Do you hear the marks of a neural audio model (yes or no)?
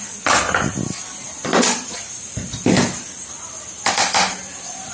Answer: no